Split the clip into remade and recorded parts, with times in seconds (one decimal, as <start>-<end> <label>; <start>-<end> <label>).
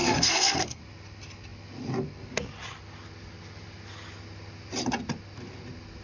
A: 0.0-0.8 remade; 0.8-6.0 recorded